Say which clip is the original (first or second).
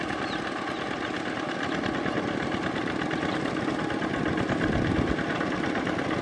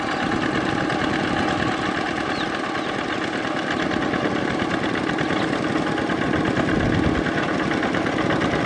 second